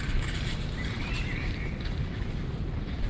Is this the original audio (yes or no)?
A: no